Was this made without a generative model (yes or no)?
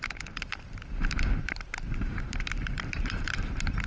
no